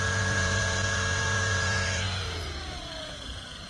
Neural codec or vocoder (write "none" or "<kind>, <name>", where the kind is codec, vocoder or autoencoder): vocoder, Vocos